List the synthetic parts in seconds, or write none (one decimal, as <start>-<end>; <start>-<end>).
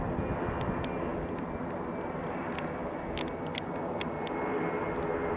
none